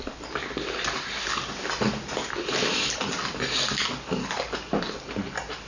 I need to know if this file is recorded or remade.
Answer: recorded